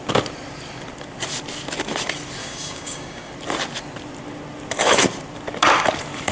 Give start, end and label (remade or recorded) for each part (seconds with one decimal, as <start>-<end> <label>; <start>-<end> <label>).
0.0-2.4 recorded; 2.4-3.3 remade; 3.3-6.3 recorded